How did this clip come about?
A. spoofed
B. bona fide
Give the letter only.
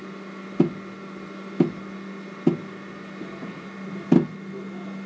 B